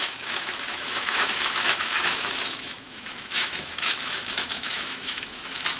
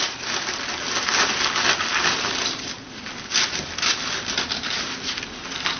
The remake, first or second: first